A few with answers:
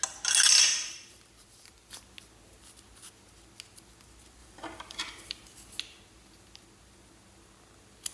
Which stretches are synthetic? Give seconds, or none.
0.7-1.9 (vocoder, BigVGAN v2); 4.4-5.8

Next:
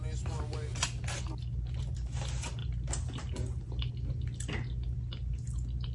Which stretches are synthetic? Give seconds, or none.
none

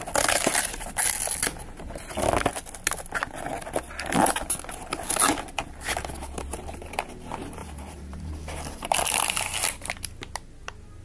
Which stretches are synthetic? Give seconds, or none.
7.6-8.3 (vocoder, BigVGAN v2)

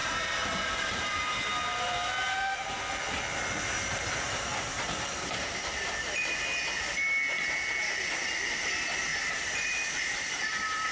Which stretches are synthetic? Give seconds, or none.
0.0-1.5 (vocoder, BigVGAN v2); 4.7-6.4; 9.1-10.9

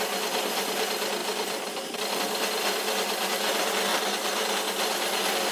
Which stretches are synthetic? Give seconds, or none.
1.2-2.2 (vocoder, BigVGAN v2); 3.9-4.4

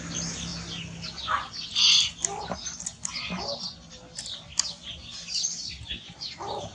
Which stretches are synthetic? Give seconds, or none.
none

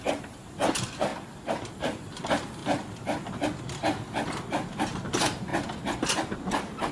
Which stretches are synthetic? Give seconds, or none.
0.0-1.1 (vocoder, BigVGAN v2); 1.7-2.6; 4.7-5.5